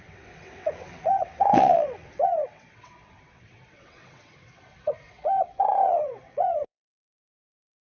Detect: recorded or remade remade